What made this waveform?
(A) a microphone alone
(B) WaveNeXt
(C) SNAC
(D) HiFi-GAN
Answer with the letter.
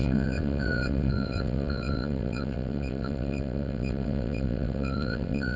B